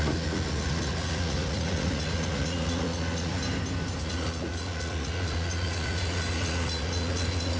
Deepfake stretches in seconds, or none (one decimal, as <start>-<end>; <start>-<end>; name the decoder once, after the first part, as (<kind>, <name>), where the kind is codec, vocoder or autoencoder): 0.0-3.4 (vocoder, Vocos); 4.0-7.6